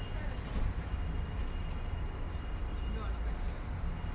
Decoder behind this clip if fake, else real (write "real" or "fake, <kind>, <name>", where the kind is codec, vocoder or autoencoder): real